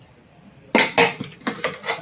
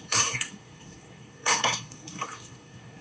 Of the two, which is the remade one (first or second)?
second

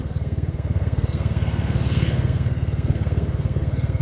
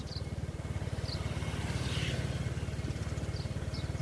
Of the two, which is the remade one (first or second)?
first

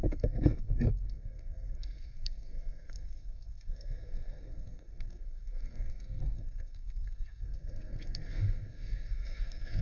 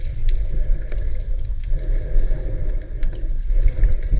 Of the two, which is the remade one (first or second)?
first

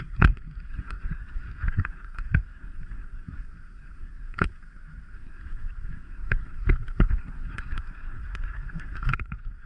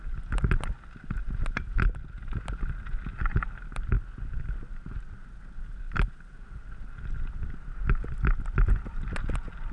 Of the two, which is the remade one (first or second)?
first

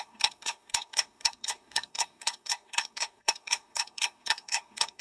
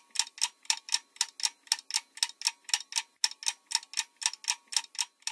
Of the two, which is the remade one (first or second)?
first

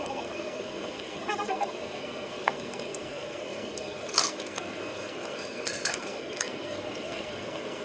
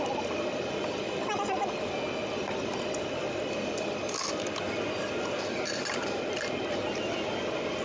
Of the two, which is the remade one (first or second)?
first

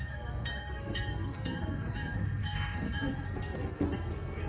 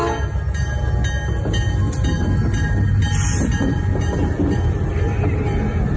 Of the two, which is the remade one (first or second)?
first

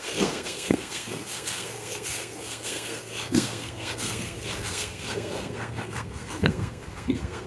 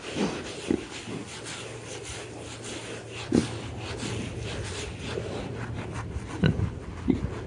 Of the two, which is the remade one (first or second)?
first